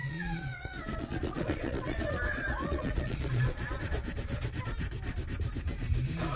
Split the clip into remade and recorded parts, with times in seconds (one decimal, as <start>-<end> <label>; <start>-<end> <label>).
0.0-3.8 remade; 3.8-6.4 recorded